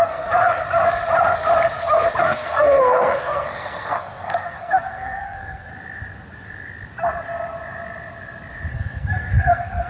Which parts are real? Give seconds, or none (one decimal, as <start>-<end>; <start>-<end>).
0.6-2.2; 5.7-8.7